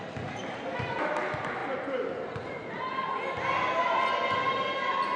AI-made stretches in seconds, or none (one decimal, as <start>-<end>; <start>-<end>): none